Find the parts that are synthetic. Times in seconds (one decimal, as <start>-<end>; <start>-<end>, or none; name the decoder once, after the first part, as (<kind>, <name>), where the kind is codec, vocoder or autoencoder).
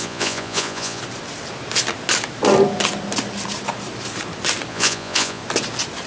0.0-1.0 (vocoder, Vocos); 4.7-5.4